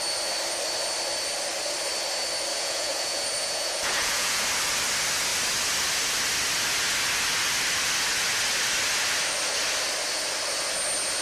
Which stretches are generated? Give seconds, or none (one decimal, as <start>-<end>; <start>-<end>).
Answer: 2.5-4.4